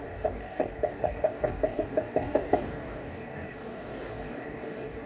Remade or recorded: remade